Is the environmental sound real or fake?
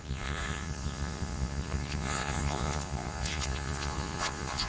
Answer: fake